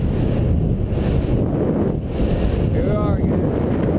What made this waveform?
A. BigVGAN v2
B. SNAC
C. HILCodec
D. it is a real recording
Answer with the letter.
D